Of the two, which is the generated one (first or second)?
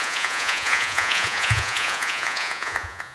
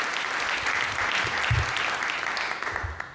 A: first